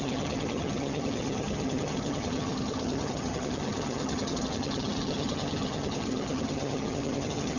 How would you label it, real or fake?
fake